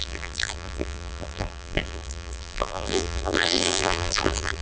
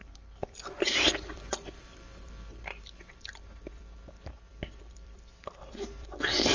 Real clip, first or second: second